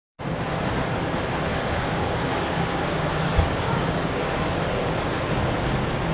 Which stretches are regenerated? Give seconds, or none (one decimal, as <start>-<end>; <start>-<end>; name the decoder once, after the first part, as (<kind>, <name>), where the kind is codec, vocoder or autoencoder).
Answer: 1.5-5.2 (codec, DAC)